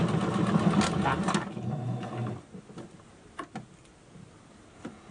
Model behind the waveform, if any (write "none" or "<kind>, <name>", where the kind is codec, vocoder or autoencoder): none